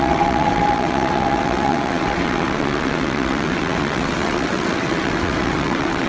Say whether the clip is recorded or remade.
remade